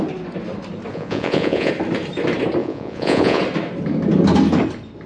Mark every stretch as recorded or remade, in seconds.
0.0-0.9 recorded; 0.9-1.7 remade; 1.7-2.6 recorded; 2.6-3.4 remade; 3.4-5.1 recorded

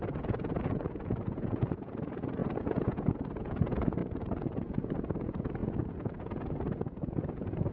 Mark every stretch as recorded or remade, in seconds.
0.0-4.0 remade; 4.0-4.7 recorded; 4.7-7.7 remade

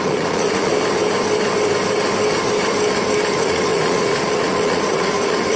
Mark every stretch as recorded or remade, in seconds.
0.0-0.7 remade; 0.7-3.3 recorded; 3.3-5.6 remade

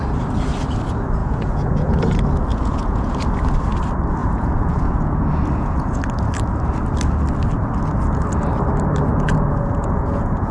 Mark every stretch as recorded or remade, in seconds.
0.0-1.2 recorded; 1.2-2.0 remade; 2.0-2.5 recorded; 2.5-3.1 remade; 3.1-4.2 recorded; 4.2-6.0 remade; 6.0-9.1 recorded; 9.1-10.5 remade

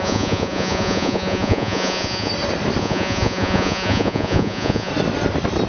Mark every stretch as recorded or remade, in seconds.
0.0-2.3 remade; 2.3-2.8 recorded; 2.8-4.9 remade; 4.9-5.7 recorded

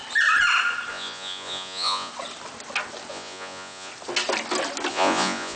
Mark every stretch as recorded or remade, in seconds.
0.0-0.9 recorded; 0.9-2.1 remade; 2.1-3.1 recorded; 3.1-3.9 remade; 3.9-4.9 recorded; 4.9-5.6 remade

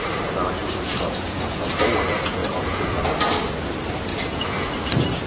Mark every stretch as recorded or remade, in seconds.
0.0-0.6 recorded; 0.6-1.7 remade; 1.7-2.4 recorded; 2.4-3.0 remade; 3.0-4.1 recorded; 4.1-4.7 remade; 4.7-5.3 recorded